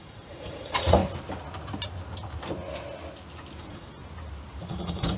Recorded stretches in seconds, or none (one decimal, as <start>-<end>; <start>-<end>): 1.0-3.6; 4.0-4.6